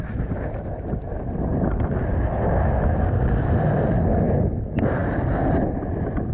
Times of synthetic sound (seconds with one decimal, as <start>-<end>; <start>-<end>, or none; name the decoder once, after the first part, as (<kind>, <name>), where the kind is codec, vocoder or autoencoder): none